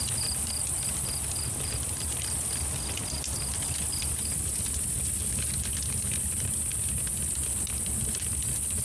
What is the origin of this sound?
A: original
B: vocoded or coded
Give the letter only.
A